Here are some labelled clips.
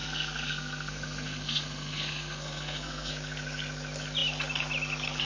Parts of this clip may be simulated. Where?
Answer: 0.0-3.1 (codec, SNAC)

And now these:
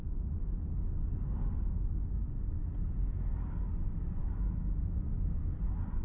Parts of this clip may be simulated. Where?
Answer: 4.2-4.8 (autoencoder, DAC-VAE)

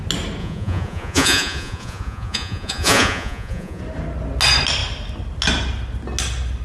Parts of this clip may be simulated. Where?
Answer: 0.4-3.8 (vocoder, Vocos)

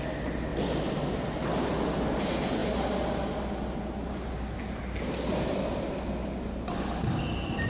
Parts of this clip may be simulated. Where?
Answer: none

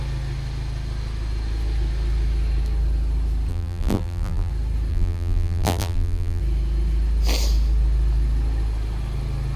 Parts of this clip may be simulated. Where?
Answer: 3.5-4.5 (vocoder, BigVGAN v2); 4.9-6.4